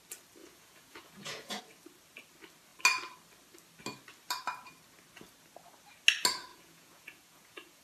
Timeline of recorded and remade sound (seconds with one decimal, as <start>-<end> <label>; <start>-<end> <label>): 0.0-0.4 recorded; 0.4-1.6 remade; 1.6-6.5 recorded; 6.5-7.8 remade